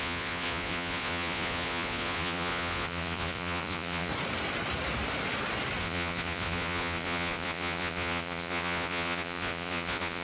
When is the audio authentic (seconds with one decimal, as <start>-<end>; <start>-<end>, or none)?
4.1-5.8